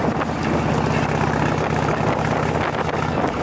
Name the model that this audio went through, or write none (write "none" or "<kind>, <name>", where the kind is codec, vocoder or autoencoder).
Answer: none